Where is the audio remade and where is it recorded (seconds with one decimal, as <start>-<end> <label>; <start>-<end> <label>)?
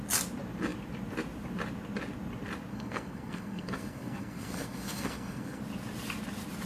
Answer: 0.0-2.7 recorded; 2.7-5.6 remade; 5.6-6.7 recorded